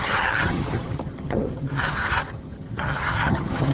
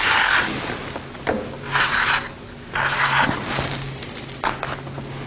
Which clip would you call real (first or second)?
second